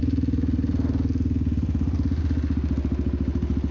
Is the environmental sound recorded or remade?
recorded